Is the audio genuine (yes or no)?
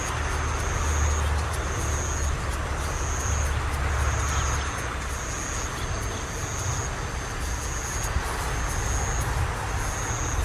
yes